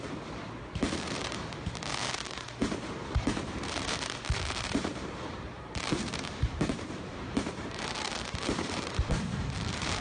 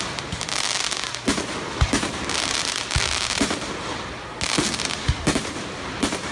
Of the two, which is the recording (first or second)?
second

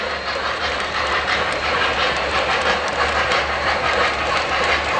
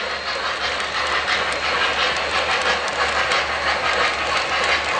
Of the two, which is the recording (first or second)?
second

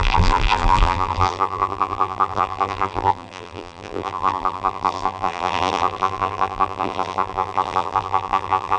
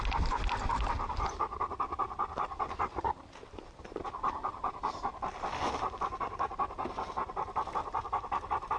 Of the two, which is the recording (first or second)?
second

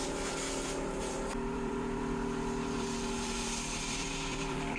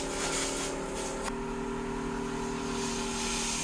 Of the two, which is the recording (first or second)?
second